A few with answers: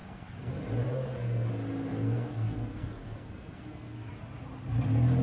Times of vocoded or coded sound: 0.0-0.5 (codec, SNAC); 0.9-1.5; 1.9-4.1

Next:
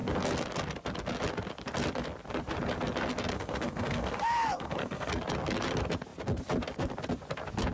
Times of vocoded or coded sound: 3.3-5.1 (codec, SNAC)

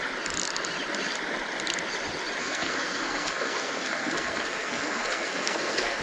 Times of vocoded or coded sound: 2.4-6.0 (codec, SNAC)